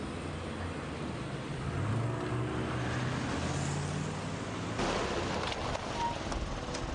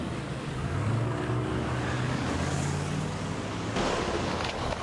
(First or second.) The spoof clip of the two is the second